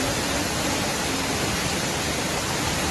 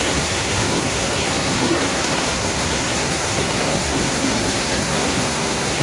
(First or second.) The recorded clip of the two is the first